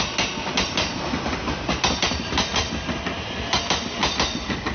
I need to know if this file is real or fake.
real